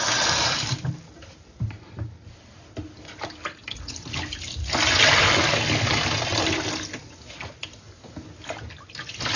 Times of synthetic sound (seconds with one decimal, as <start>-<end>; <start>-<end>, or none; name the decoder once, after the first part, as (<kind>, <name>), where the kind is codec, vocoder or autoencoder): none